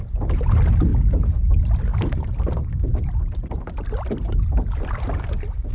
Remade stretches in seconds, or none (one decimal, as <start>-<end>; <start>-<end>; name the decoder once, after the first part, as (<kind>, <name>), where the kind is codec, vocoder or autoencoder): none